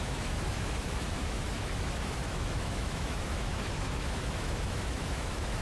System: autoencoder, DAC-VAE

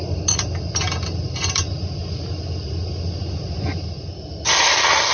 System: none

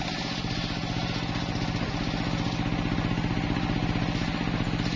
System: none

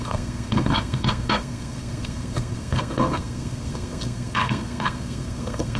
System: codec, SNAC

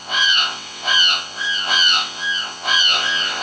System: vocoder, WaveNeXt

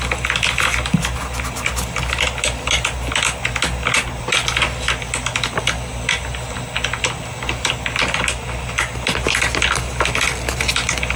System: none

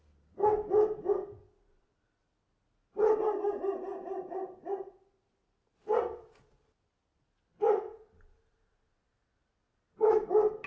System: none